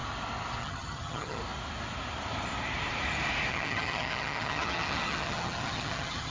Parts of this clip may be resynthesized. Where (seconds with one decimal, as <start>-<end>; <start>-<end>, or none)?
0.6-1.4; 3.5-6.3